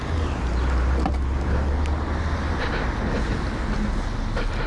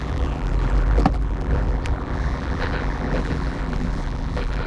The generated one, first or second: second